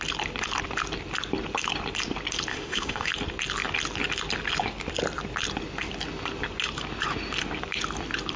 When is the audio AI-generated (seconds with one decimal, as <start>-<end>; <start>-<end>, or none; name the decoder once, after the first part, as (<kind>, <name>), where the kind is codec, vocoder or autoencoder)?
2.5-3.1 (autoencoder, DAC-VAE)